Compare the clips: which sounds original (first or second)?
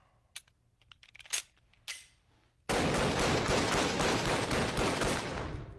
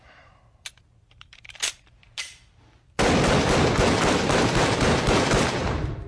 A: first